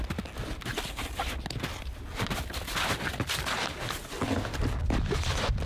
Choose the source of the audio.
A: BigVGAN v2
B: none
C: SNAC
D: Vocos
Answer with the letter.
B